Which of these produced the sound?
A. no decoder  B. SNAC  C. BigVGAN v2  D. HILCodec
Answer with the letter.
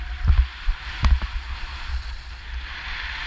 A